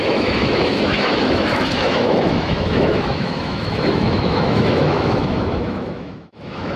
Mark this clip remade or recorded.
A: remade